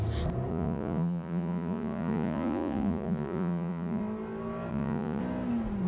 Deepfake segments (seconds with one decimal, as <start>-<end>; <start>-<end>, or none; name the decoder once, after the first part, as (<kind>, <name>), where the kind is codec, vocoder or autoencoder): 0.5-4.0 (vocoder, Vocos); 4.7-5.2